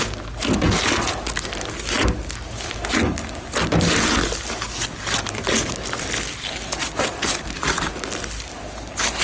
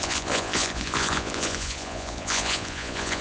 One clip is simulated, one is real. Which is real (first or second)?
first